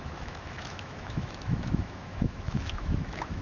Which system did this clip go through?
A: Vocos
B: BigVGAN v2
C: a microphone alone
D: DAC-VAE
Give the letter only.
D